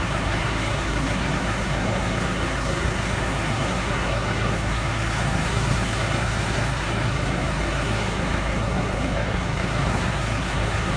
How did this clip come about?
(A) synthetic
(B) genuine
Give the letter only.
A